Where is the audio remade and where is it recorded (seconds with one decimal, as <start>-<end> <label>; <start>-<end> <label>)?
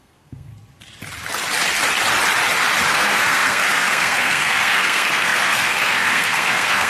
0.0-0.5 remade; 0.5-2.9 recorded; 2.9-6.9 remade